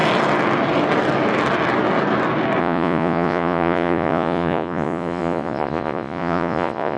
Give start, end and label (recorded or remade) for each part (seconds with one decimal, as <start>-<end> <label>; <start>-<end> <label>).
0.0-2.6 recorded; 2.6-7.0 remade